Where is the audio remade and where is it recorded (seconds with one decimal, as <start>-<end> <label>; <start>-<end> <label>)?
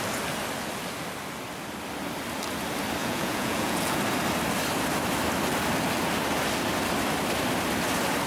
0.0-3.0 recorded; 3.0-4.0 remade; 4.0-8.3 recorded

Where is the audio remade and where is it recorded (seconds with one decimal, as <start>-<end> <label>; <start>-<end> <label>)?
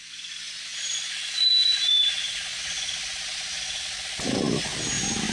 0.0-5.3 recorded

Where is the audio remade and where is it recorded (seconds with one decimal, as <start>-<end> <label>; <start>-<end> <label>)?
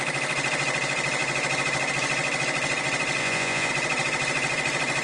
0.0-3.2 recorded; 3.2-3.7 remade; 3.7-5.0 recorded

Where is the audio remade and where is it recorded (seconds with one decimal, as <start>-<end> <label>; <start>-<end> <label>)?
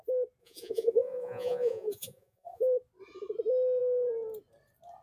0.0-0.4 recorded; 0.4-2.6 remade; 2.6-5.0 recorded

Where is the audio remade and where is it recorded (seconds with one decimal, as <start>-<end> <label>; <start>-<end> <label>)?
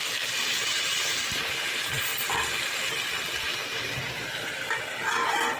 0.0-5.6 recorded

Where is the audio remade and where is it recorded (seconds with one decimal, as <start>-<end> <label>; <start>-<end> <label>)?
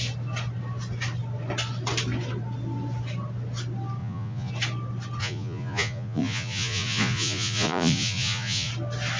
0.0-4.0 recorded; 4.0-4.5 remade; 4.5-5.2 recorded; 5.2-8.7 remade; 8.7-9.2 recorded